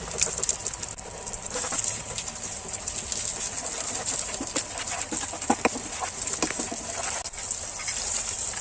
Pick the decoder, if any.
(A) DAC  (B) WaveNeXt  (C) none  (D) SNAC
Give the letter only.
C